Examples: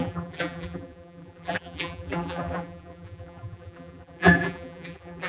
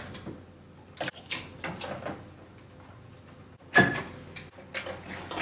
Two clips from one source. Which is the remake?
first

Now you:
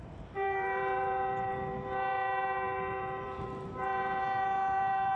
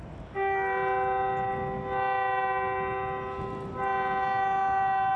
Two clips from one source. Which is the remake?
first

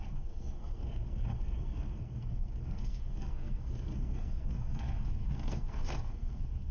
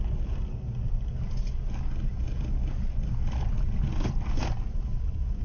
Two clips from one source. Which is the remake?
first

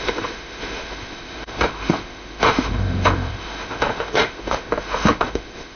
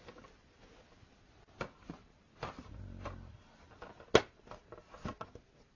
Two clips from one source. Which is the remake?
first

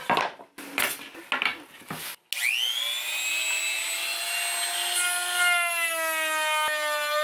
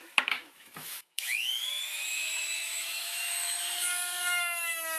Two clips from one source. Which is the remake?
second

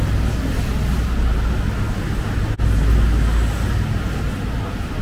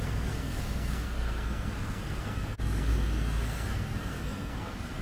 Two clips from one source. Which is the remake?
second